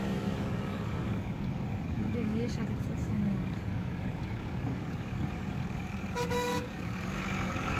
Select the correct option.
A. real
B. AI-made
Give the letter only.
B